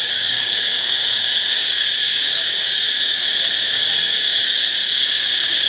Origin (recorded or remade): remade